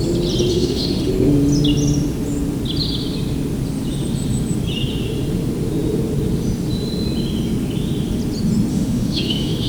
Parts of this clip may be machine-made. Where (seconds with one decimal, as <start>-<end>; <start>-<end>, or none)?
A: 0.5-1.1; 8.7-9.7